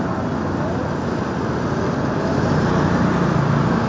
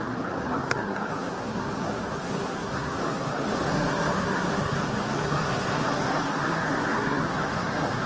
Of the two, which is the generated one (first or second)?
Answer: second